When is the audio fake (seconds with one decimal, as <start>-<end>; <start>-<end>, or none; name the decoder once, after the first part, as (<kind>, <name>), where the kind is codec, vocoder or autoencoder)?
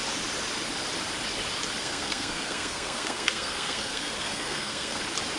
1.8-5.0 (codec, SNAC)